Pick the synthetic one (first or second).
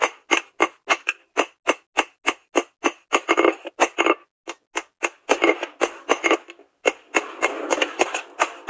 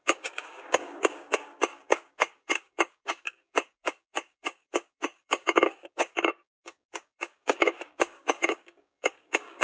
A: second